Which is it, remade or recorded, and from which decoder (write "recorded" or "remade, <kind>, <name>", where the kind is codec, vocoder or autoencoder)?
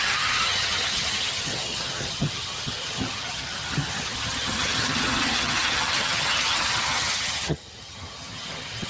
remade, vocoder, HiFi-GAN